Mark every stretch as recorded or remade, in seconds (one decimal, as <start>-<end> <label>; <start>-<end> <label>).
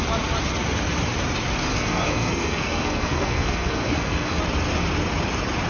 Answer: 0.0-1.7 recorded; 1.7-4.4 remade; 4.4-5.7 recorded